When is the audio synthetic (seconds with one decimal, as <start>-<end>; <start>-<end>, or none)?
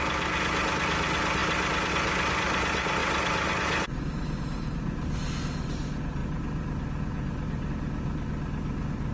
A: 3.0-4.4